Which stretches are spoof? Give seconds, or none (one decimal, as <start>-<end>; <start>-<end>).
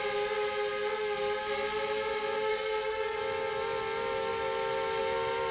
2.5-3.2